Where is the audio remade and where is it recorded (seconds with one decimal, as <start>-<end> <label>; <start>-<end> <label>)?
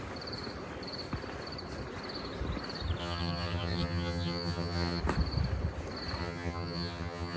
0.0-3.0 recorded; 3.0-5.0 remade; 5.0-6.2 recorded; 6.2-7.4 remade